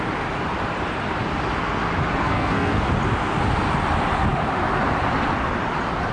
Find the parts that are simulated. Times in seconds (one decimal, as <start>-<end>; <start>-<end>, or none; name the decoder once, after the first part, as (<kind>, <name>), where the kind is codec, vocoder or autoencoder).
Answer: 2.2-2.8 (codec, SNAC)